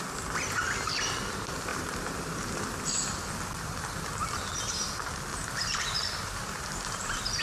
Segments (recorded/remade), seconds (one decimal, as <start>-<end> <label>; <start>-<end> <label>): 0.0-1.7 recorded; 1.7-2.7 remade; 2.7-5.3 recorded; 5.3-7.4 remade